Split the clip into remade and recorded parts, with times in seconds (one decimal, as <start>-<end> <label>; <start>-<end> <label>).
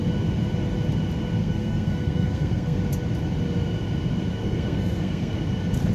0.0-1.4 recorded; 1.4-2.8 remade; 2.8-4.4 recorded; 4.4-5.4 remade; 5.4-5.9 recorded